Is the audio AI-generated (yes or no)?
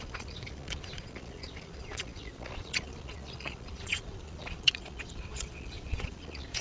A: yes